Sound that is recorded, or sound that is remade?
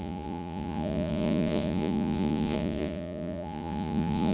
remade